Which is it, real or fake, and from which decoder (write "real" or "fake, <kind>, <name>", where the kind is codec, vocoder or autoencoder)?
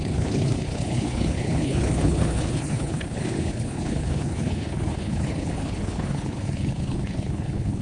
fake, codec, HILCodec